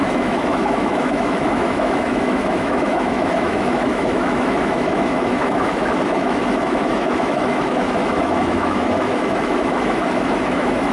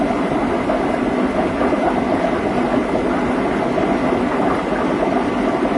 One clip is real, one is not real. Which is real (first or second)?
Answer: second